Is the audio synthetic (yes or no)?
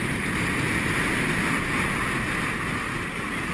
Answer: no